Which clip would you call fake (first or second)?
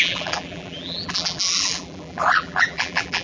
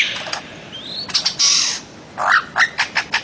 first